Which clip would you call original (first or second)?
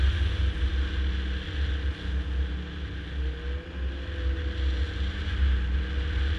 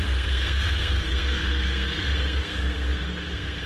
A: first